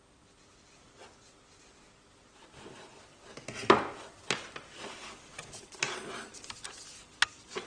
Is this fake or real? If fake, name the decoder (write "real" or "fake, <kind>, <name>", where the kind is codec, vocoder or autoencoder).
real